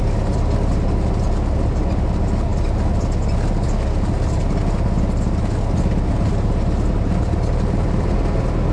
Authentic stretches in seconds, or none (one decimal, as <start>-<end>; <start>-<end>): 0.0-8.7